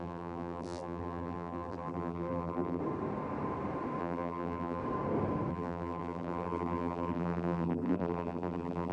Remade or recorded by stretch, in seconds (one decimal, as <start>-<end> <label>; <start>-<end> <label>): 0.0-2.8 remade; 2.8-4.0 recorded; 4.0-4.8 remade; 4.8-5.5 recorded; 5.5-8.9 remade